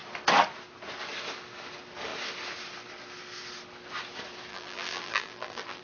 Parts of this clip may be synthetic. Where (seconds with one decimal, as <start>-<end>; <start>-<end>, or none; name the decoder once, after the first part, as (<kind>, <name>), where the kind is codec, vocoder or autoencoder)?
4.5-5.8 (vocoder, BigVGAN v2)